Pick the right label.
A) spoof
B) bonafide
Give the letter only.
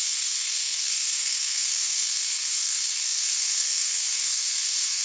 A